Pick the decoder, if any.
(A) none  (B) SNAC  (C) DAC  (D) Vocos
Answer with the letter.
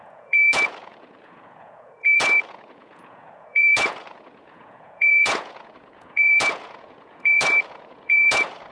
D